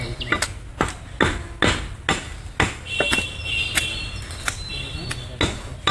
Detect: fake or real real